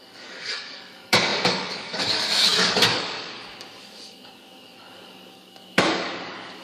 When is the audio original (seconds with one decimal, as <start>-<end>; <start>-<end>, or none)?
none